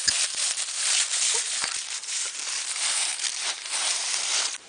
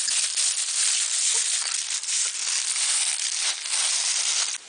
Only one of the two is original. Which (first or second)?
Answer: second